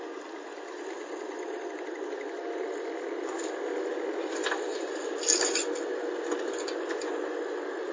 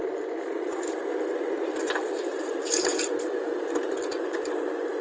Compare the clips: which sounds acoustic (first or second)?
first